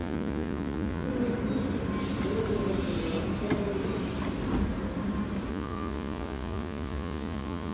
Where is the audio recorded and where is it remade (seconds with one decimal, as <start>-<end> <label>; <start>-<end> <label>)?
0.0-1.1 remade; 1.1-5.5 recorded; 5.5-7.7 remade